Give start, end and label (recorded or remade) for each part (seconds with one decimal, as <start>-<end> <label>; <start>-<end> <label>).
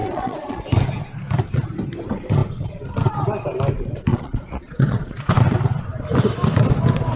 0.0-0.6 remade; 0.6-4.1 recorded; 4.1-5.3 remade; 5.3-7.2 recorded